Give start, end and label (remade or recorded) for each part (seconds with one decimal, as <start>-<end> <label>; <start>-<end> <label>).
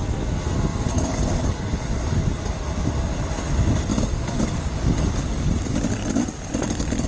0.0-0.7 recorded; 0.7-2.2 remade; 2.2-3.9 recorded; 3.9-5.5 remade; 5.5-7.1 recorded